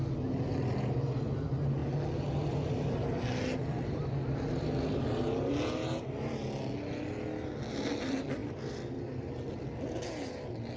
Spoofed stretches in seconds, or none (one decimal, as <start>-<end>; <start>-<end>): none